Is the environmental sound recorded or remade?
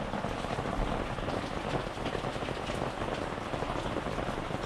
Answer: recorded